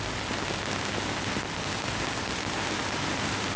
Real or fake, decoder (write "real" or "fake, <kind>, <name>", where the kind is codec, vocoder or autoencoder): real